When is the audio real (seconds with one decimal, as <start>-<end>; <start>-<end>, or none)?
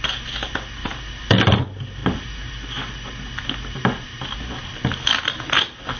0.0-6.0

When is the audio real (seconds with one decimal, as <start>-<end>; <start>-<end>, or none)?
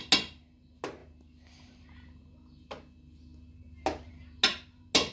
0.0-5.1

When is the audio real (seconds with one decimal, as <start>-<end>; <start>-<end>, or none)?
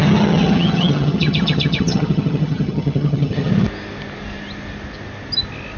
3.5-5.8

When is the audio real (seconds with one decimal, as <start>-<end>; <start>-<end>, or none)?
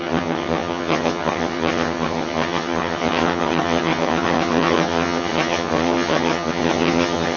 none